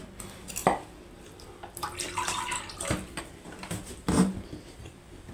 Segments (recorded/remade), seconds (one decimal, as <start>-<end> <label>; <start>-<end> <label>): 0.0-0.6 recorded; 0.6-3.2 remade; 3.2-5.3 recorded